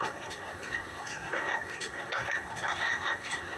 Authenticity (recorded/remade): remade